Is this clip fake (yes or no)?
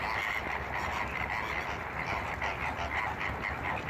no